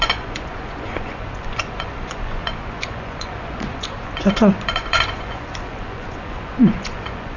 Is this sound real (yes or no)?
no